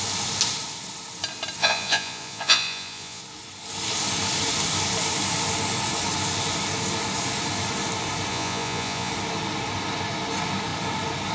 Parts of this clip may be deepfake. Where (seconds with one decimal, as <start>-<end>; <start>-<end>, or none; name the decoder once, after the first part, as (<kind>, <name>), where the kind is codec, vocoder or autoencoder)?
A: 1.6-3.2 (vocoder, Vocos); 8.3-9.1